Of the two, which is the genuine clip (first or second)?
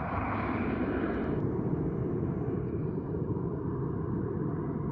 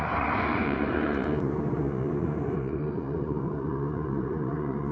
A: first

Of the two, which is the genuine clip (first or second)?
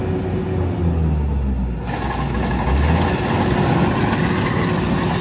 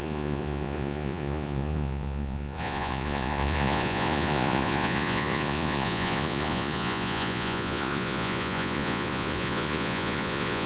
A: first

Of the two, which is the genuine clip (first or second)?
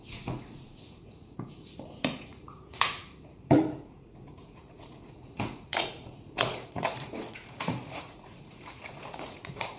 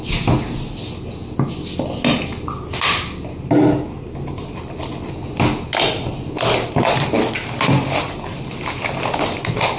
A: second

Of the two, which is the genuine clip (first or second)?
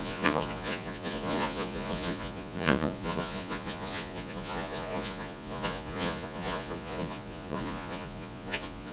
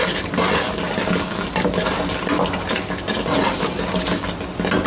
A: second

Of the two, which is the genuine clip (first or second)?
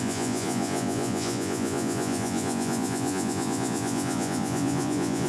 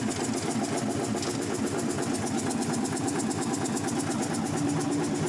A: second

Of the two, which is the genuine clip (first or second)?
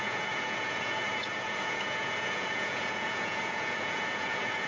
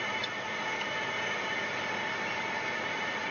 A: second